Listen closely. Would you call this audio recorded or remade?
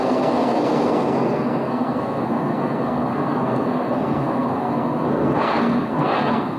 remade